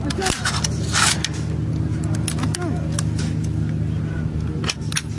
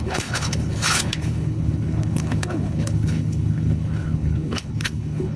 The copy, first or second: second